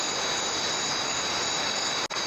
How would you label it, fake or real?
real